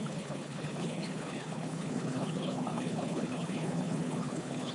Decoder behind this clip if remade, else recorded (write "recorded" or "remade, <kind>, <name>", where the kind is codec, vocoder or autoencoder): remade, codec, HILCodec